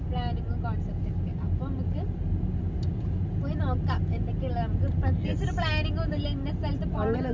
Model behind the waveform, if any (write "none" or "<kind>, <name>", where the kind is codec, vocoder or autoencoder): none